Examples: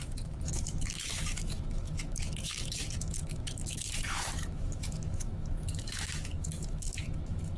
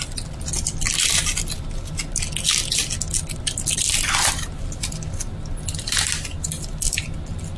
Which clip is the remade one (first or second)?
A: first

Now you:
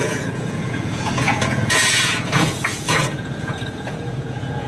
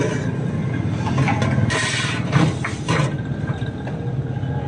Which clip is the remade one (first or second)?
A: first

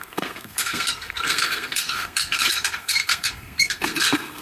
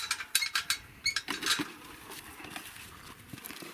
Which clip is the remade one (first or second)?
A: first